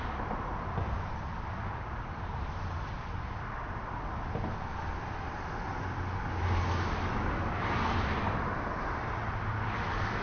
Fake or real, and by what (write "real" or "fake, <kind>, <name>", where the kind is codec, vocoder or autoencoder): real